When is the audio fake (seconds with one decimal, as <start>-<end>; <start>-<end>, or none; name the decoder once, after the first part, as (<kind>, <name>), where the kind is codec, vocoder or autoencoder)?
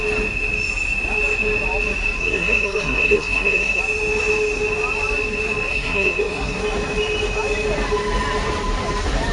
2.2-3.8 (codec, SNAC); 5.7-6.6